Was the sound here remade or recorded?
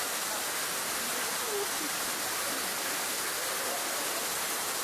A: recorded